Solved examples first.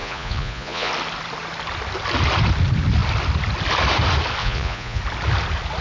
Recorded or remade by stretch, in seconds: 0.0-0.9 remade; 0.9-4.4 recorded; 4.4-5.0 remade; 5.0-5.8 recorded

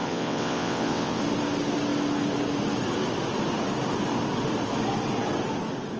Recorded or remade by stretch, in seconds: 0.0-1.2 remade; 1.2-6.0 recorded

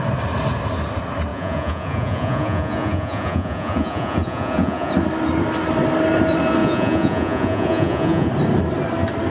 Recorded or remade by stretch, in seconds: 0.0-1.3 recorded; 1.3-4.9 remade; 4.9-6.6 recorded; 6.6-8.3 remade; 8.3-9.3 recorded

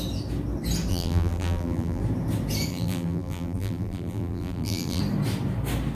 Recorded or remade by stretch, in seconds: 0.0-0.9 recorded; 0.9-2.0 remade; 2.0-2.7 recorded; 2.7-5.0 remade; 5.0-5.9 recorded